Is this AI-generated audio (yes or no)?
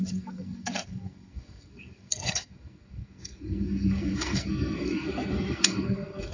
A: yes